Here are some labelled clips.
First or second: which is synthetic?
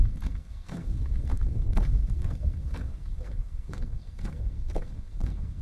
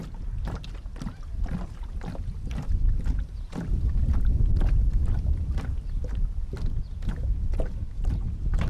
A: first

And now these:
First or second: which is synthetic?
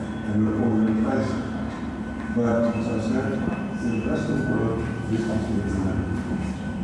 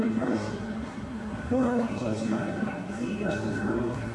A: second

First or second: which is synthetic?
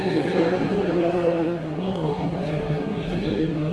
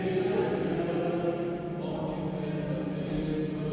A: first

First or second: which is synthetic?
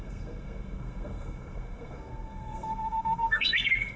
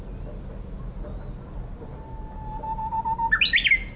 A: first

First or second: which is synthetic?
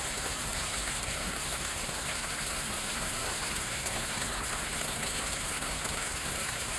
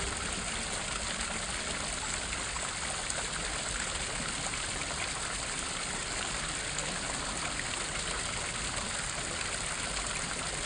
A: first